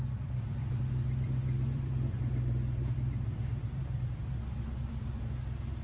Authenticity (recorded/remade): remade